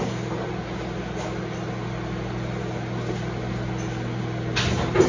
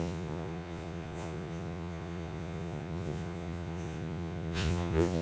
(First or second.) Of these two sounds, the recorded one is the first